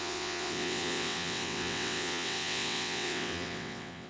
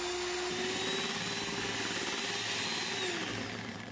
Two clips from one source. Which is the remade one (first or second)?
first